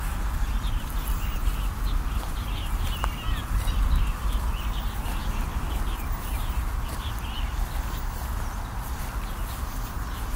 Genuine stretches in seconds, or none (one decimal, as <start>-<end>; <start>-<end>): 0.0-10.4

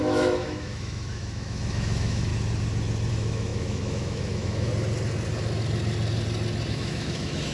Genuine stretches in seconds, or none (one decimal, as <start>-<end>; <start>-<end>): 2.3-3.1; 4.7-6.7

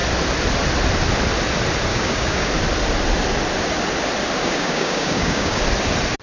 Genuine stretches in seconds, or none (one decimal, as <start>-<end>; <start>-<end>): 0.0-1.9; 2.5-4.4; 5.6-6.2